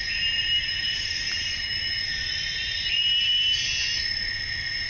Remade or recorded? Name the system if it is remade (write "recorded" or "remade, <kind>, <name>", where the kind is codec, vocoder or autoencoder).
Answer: recorded